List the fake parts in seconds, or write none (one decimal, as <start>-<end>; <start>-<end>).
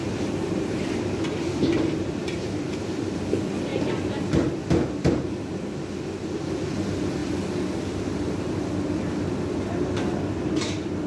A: 0.0-3.0